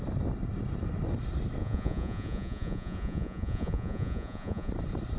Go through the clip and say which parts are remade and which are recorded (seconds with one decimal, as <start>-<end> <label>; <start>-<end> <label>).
0.0-1.6 recorded; 1.6-4.7 remade; 4.7-5.2 recorded